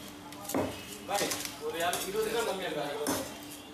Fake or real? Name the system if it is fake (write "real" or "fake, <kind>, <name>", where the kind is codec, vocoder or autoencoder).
real